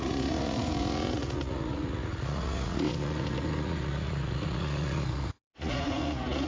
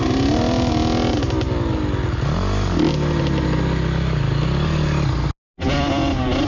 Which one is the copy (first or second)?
first